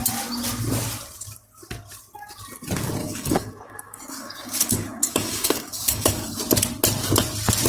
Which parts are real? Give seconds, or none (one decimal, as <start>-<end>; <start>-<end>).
0.0-3.0; 6.4-7.7